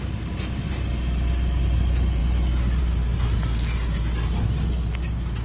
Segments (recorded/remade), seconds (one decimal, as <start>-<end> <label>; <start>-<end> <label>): 0.0-5.4 recorded